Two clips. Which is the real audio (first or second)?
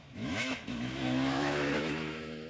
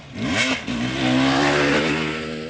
second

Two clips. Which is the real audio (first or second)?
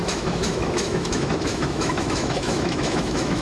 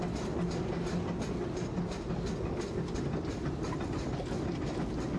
second